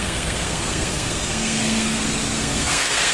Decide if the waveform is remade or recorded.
remade